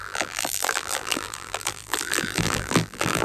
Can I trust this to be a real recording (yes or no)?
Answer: no